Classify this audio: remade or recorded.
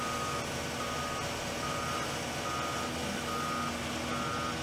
recorded